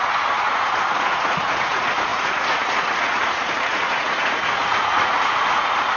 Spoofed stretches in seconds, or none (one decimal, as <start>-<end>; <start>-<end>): 0.0-6.0